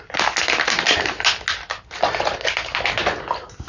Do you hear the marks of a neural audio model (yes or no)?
no